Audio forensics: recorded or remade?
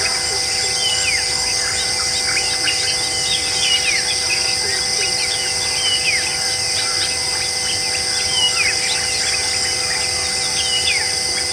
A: recorded